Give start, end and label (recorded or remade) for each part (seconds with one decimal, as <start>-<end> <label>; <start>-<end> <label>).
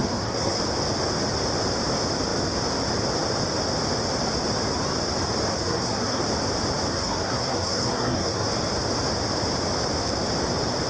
0.0-0.6 remade; 0.6-5.5 recorded; 5.5-6.2 remade; 6.2-6.9 recorded; 6.9-8.5 remade; 8.5-10.9 recorded